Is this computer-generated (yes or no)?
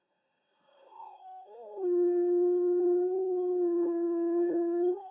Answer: yes